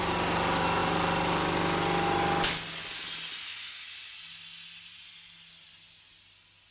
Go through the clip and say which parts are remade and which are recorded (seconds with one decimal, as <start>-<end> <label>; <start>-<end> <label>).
0.0-6.7 recorded